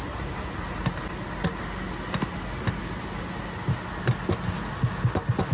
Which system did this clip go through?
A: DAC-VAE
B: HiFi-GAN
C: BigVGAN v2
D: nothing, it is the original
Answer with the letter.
D